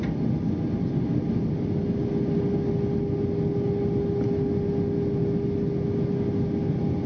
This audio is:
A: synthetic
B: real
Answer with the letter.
B